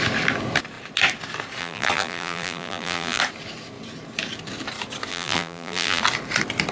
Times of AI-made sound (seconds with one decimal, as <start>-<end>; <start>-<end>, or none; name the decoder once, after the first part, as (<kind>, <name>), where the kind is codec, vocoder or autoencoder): 1.6-3.2 (vocoder, BigVGAN v2); 5.1-6.0